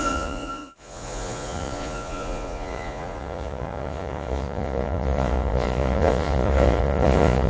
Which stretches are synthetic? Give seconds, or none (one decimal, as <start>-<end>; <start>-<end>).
0.0-7.5